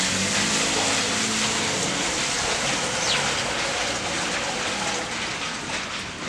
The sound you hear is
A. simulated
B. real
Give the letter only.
B